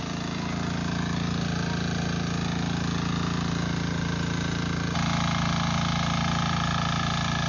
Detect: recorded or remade recorded